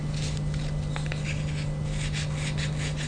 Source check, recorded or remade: recorded